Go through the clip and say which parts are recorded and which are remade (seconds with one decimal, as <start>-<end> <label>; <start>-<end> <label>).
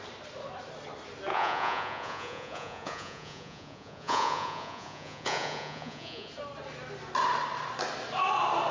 0.0-1.3 recorded; 1.3-6.3 remade; 6.3-8.7 recorded